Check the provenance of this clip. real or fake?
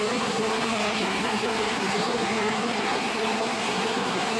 fake